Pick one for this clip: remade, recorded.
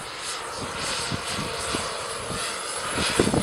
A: recorded